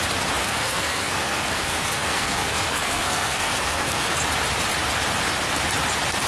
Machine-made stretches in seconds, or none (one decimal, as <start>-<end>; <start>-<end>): 0.4-4.2